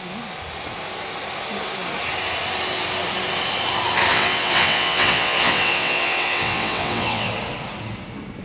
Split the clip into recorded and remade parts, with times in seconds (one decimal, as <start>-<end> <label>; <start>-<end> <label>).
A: 0.0-4.1 recorded; 4.1-7.3 remade; 7.3-8.4 recorded